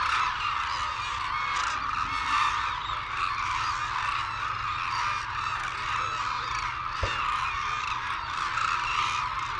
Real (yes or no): yes